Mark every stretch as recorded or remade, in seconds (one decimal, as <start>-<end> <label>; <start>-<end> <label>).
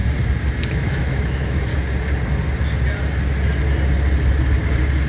0.0-0.6 recorded; 0.6-1.7 remade; 1.7-5.1 recorded